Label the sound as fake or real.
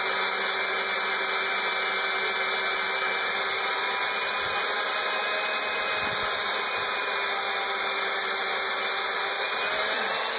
real